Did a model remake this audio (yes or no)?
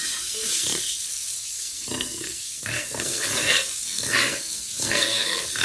yes